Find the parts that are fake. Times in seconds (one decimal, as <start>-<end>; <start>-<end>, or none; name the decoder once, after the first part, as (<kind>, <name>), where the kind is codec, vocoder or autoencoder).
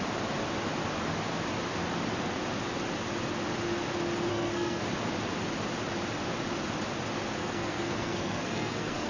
4.3-4.8 (codec, SNAC); 7.4-9.1